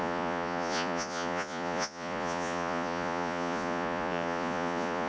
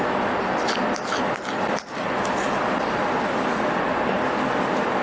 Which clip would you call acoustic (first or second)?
second